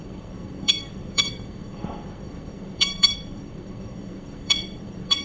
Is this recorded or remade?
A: remade